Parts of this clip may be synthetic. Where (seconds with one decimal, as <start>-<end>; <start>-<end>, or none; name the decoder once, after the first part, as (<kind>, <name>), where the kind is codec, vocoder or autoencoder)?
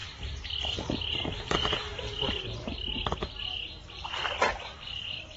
0.0-5.4 (vocoder, BigVGAN v2)